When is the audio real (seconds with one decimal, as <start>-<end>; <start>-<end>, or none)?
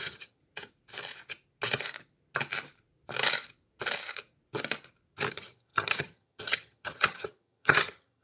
0.4-5.3